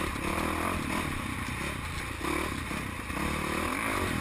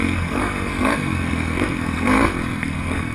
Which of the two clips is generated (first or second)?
second